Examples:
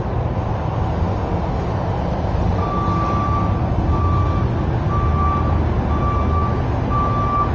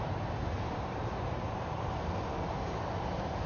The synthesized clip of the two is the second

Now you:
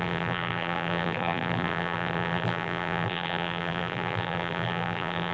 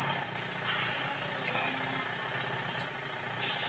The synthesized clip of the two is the first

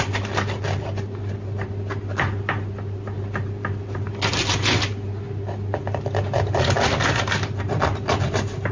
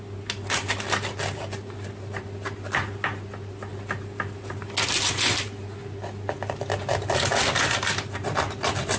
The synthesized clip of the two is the first